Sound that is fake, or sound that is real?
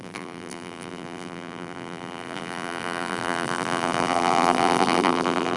fake